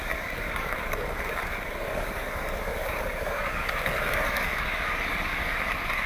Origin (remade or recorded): remade